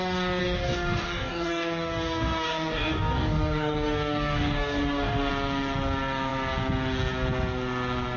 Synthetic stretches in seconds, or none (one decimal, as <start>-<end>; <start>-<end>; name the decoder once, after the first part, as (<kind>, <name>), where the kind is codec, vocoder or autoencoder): 0.4-5.3 (codec, DAC)